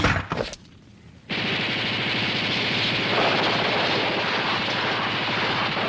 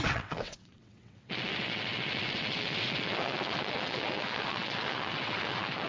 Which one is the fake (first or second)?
second